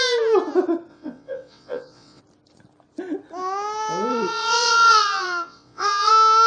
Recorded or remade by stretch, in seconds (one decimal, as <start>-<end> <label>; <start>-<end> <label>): 0.0-0.9 recorded; 0.9-2.2 remade; 2.2-4.1 recorded; 4.1-6.1 remade; 6.1-6.5 recorded